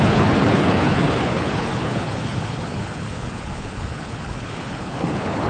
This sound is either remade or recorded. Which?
remade